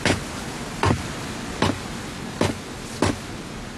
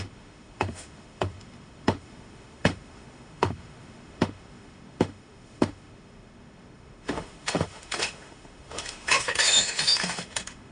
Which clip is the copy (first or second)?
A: second